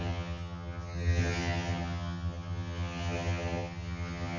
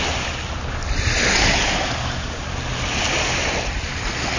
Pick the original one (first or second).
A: second